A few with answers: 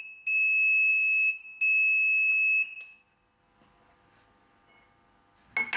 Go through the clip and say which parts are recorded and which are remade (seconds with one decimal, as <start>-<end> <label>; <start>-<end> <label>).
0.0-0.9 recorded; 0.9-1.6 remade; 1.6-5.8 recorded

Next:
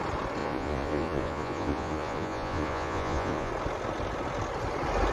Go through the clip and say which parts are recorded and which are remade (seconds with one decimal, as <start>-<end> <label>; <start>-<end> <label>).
0.0-0.4 recorded; 0.4-3.5 remade; 3.5-5.1 recorded

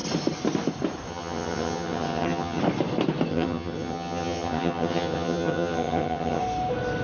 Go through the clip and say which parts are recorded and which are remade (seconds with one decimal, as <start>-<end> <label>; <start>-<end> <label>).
0.0-1.1 recorded; 1.1-2.6 remade; 2.6-3.3 recorded; 3.3-6.4 remade; 6.4-7.0 recorded